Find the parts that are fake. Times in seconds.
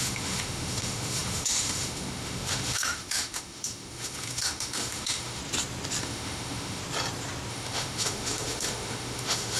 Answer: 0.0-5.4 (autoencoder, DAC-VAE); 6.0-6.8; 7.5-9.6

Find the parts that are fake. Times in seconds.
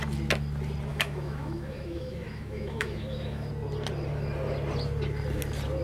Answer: 0.9-3.5 (autoencoder, DAC-VAE)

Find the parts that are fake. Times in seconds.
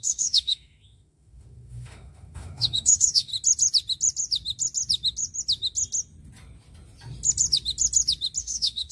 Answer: 0.0-3.3 (autoencoder, DAC-VAE); 8.4-8.9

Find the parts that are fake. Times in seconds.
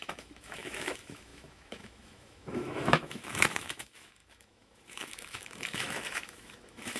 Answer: 0.0-7.0 (autoencoder, DAC-VAE)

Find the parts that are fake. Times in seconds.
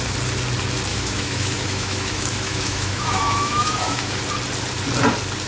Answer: 0.9-4.2 (autoencoder, DAC-VAE)